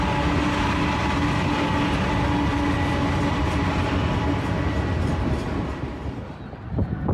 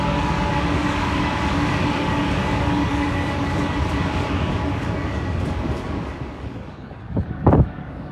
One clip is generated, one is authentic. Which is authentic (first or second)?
first